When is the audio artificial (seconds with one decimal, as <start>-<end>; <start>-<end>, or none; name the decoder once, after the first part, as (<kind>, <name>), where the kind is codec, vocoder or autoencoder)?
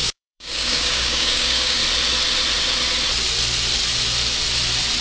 0.0-1.8 (codec, DAC)